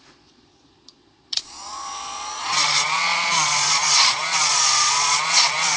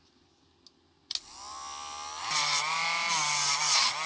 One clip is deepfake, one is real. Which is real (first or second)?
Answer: second